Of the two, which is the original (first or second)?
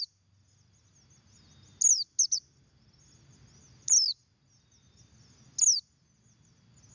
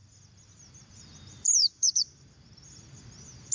first